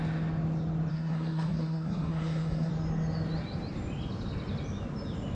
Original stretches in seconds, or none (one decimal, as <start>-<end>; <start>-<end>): 0.0-0.9; 2.7-5.3